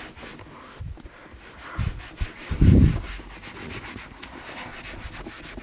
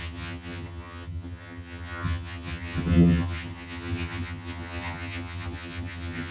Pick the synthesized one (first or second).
second